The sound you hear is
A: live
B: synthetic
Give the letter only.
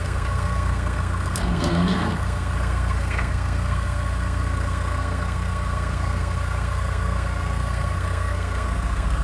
B